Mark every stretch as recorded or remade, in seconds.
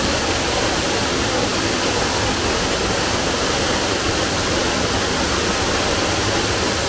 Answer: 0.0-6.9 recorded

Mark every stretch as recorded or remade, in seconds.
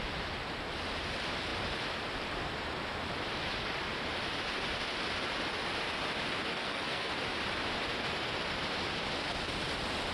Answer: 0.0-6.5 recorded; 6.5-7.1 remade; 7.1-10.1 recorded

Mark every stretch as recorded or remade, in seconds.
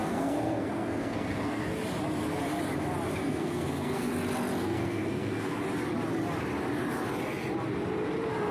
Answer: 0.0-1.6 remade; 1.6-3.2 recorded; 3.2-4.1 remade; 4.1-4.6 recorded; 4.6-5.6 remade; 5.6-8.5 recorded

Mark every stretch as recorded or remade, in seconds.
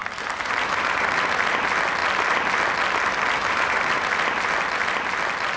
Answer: 0.0-5.6 recorded